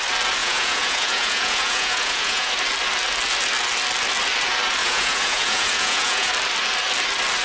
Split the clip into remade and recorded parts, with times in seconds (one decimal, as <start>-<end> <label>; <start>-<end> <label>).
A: 0.0-0.4 recorded; 0.4-2.5 remade; 2.5-4.8 recorded; 4.8-6.3 remade; 6.3-7.4 recorded